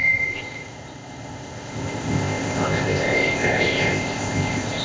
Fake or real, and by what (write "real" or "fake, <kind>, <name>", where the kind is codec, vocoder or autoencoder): fake, codec, ZipCodec